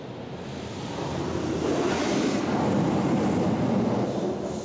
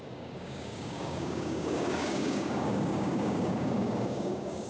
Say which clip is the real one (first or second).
first